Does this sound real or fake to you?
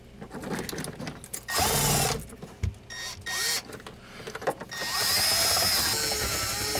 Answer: real